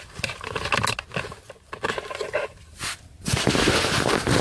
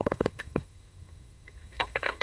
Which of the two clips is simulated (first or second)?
second